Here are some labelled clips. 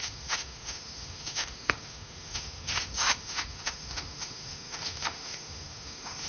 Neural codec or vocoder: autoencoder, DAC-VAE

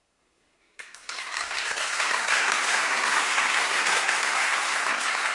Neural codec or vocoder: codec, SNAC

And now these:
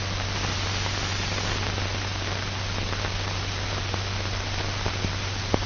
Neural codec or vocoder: none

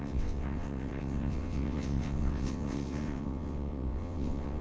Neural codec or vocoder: vocoder, WaveNeXt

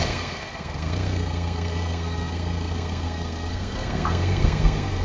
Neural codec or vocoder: codec, SNAC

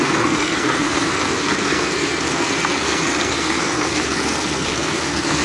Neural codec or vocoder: codec, SNAC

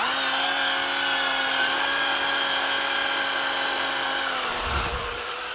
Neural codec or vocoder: none